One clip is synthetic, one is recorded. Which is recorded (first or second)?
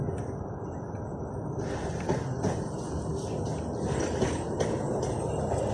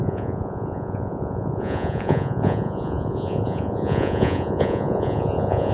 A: first